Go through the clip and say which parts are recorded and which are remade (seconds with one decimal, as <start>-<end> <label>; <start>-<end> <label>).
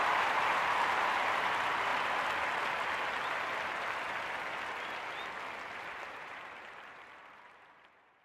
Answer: 0.0-1.9 remade; 1.9-5.9 recorded; 5.9-8.2 remade